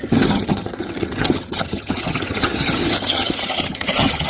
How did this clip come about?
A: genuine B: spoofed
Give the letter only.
B